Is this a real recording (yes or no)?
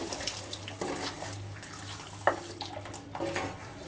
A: yes